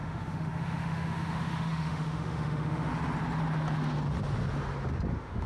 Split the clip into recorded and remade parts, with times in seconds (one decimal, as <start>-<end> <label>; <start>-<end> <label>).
0.0-2.9 remade; 2.9-5.1 recorded; 5.1-5.5 remade